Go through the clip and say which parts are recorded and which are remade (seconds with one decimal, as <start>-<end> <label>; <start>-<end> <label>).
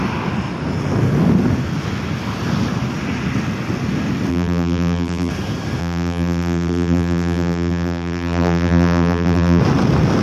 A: 0.0-4.3 recorded; 4.3-5.3 remade; 5.3-5.8 recorded; 5.8-9.6 remade; 9.6-10.2 recorded